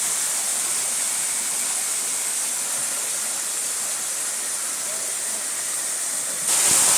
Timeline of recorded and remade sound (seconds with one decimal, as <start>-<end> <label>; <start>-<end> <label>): 0.0-7.0 recorded